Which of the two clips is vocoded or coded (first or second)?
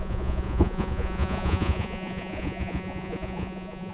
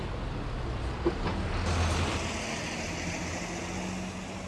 first